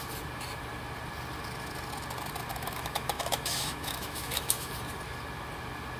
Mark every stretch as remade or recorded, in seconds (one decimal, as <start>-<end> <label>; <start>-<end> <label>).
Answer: 0.0-2.5 recorded; 2.5-4.7 remade; 4.7-6.0 recorded